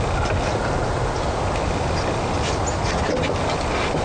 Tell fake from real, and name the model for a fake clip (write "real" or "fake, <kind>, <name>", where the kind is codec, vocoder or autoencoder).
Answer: real